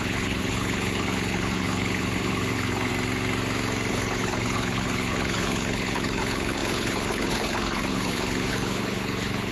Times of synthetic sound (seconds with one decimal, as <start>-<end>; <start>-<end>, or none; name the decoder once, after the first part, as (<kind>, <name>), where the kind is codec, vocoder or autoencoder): 0.0-2.9 (codec, HILCodec); 3.9-9.5